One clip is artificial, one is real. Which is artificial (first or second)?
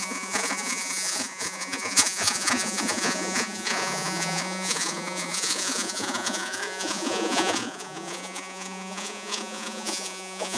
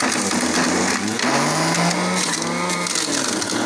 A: first